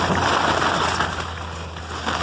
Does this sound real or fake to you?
real